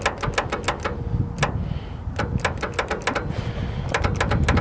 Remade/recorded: recorded